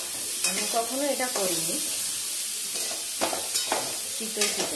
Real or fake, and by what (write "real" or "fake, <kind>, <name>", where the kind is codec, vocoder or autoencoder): real